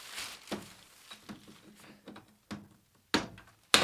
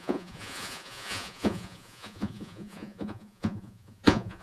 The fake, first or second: second